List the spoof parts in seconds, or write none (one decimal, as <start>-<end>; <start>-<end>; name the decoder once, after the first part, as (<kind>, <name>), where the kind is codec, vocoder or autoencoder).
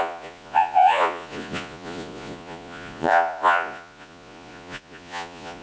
0.0-5.6 (vocoder, Vocos)